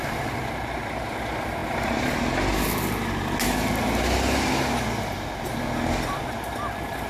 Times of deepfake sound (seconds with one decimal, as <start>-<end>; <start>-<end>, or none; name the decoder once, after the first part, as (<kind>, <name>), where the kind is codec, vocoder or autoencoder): none